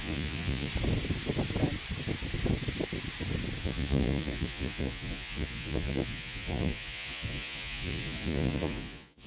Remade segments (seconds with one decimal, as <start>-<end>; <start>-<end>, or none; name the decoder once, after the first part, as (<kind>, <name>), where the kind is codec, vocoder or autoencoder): 0.0-0.7 (vocoder, Vocos); 3.6-9.3